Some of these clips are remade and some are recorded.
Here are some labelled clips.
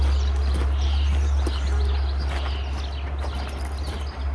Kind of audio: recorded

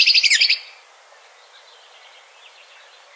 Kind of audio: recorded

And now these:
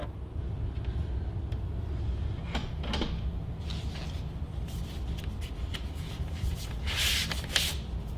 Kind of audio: recorded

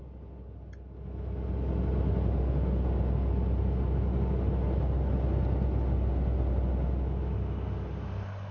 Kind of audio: recorded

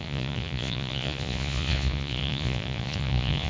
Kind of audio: remade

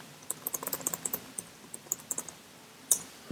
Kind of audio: remade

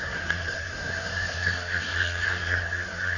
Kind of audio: remade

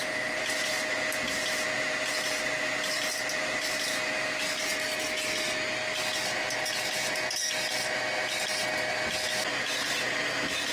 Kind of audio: recorded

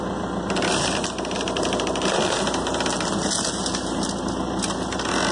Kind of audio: recorded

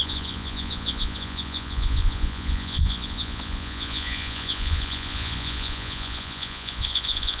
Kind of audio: remade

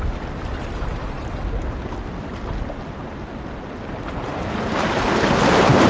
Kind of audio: recorded